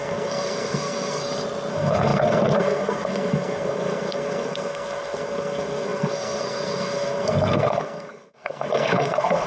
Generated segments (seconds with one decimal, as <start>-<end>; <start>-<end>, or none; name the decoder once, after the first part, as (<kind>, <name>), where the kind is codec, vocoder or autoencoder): 0.0-1.2 (codec, SNAC); 1.7-9.5